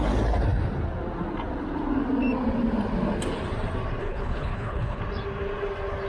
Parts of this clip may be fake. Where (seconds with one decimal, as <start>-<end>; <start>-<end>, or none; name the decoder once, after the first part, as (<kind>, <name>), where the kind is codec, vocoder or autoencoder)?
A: 4.0-5.0 (codec, HILCodec)